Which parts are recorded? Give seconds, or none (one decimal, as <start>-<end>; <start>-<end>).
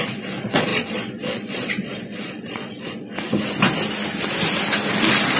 3.3-5.4